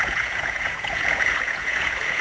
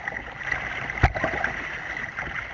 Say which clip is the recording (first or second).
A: second